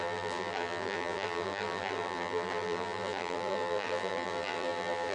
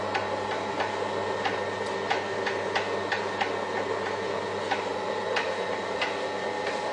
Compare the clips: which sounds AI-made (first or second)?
first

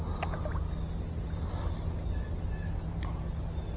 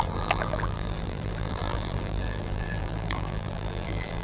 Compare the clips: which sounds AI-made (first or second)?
second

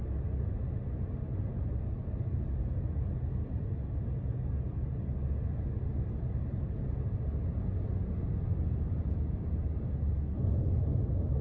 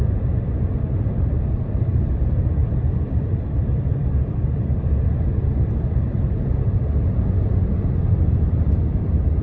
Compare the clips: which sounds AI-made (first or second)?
second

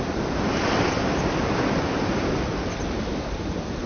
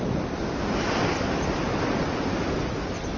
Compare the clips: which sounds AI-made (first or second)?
first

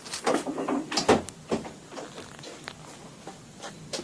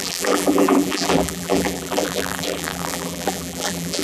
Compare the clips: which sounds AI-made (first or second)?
second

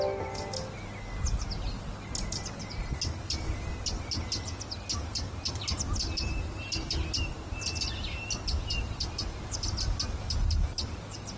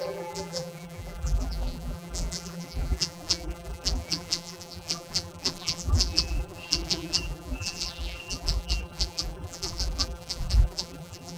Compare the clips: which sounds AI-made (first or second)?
second